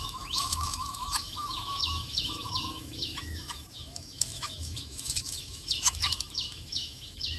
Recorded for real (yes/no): no